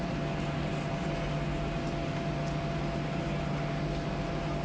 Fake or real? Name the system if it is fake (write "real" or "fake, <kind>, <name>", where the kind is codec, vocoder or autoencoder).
real